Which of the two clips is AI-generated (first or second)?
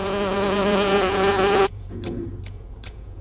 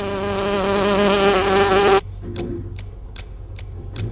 first